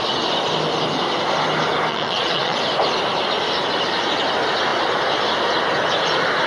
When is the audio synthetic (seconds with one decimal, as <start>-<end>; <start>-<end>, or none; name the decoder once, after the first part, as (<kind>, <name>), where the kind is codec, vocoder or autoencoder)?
1.9-2.6 (vocoder, Vocos)